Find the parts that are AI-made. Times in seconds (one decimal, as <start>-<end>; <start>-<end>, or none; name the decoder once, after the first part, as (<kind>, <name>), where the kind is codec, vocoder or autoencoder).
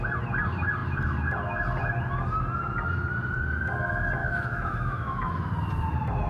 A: 4.2-5.5 (autoencoder, DAC-VAE)